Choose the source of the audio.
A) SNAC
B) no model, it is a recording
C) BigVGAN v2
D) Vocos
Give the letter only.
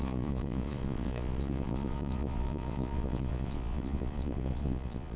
D